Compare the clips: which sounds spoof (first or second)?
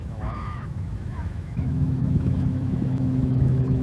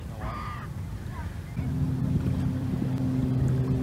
first